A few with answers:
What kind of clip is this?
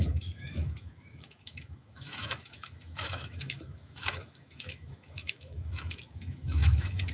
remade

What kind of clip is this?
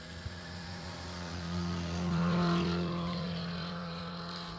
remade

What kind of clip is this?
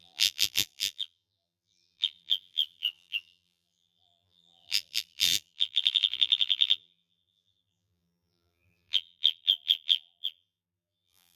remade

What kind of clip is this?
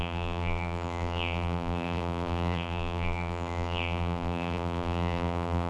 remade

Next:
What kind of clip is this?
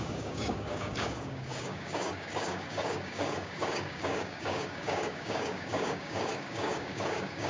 remade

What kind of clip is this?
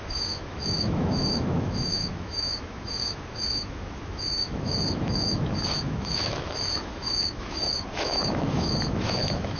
remade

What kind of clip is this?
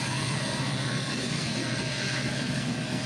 remade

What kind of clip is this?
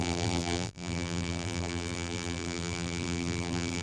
remade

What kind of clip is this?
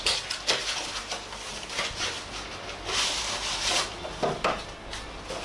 recorded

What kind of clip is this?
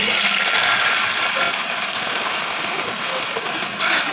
recorded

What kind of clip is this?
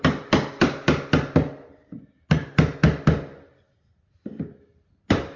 recorded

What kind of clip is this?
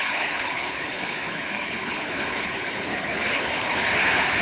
remade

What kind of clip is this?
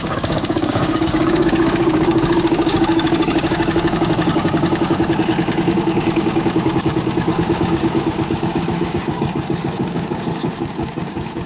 remade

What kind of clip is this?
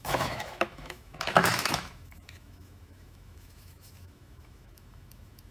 remade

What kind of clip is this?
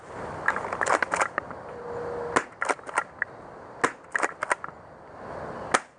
recorded